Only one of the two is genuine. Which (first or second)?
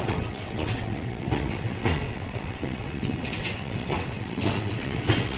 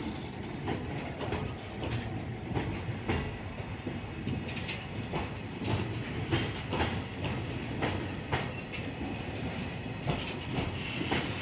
second